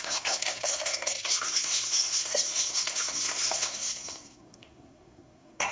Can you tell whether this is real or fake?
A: fake